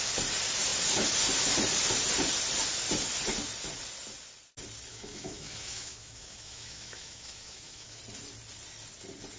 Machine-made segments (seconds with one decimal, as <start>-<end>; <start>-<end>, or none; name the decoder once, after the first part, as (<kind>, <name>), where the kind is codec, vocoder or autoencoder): 4.9-8.0 (autoencoder, DAC-VAE)

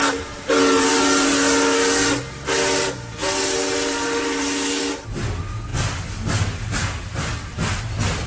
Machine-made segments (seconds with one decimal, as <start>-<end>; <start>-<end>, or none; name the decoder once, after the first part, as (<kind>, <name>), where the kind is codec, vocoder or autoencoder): none

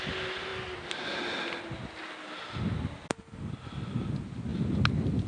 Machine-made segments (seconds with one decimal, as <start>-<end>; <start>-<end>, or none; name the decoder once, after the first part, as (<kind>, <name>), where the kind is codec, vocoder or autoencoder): none

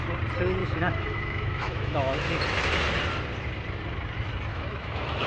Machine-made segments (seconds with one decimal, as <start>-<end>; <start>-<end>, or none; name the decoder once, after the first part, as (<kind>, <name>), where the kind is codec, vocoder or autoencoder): 0.6-2.3 (autoencoder, DAC-VAE); 4.5-5.3

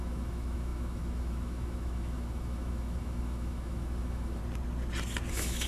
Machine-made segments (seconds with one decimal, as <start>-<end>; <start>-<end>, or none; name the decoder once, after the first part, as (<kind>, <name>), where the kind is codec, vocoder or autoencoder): 0.0-4.4 (autoencoder, DAC-VAE); 5.3-5.7